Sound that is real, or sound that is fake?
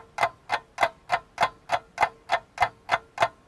real